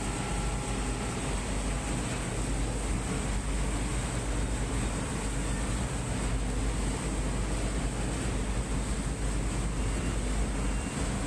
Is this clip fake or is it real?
real